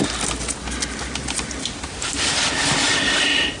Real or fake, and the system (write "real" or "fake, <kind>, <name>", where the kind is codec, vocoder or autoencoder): real